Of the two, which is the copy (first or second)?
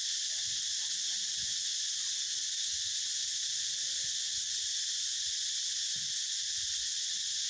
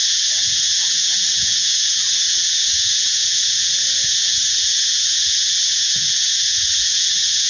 second